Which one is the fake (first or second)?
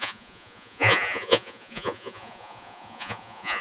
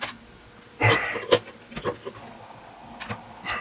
first